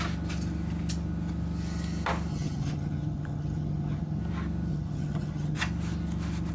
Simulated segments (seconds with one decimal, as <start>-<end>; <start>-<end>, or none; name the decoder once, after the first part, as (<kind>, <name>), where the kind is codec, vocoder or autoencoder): 2.3-4.2 (vocoder, HiFi-GAN); 4.7-5.6